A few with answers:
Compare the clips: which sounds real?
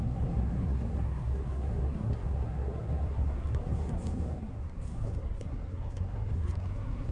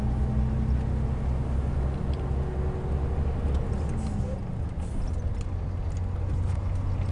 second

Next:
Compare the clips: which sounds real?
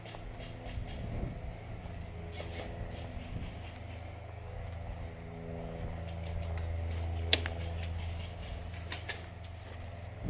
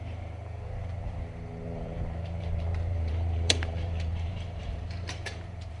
first